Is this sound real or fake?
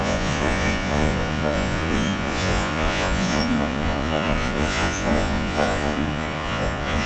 fake